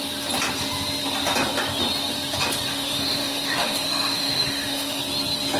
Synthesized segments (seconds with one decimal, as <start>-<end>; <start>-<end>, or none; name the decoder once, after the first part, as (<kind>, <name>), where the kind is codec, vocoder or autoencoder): 2.7-5.0 (autoencoder, DAC-VAE)